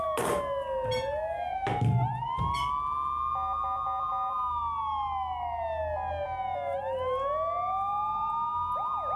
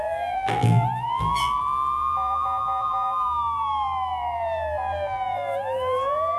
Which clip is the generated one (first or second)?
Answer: second